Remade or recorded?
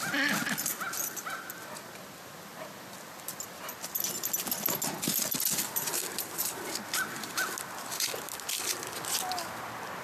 recorded